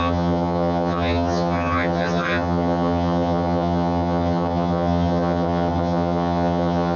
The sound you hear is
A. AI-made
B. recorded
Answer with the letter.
A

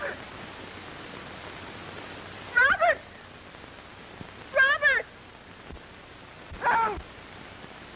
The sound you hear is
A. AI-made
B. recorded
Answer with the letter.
B